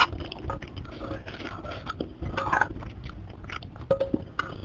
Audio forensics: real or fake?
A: real